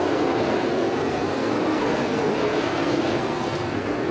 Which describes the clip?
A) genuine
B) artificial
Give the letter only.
B